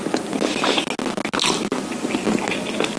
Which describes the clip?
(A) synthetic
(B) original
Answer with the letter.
B